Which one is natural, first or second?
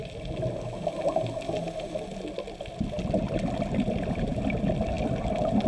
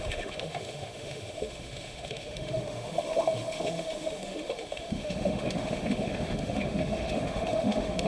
first